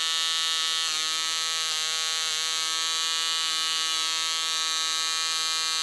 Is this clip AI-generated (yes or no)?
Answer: no